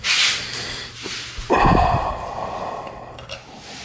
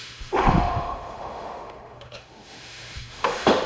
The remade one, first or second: second